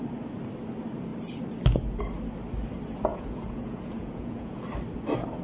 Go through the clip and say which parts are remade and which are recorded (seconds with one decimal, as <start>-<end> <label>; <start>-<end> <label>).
0.0-3.1 recorded; 3.1-4.6 remade; 4.6-5.4 recorded